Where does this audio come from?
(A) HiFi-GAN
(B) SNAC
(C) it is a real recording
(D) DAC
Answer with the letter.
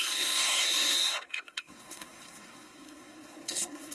B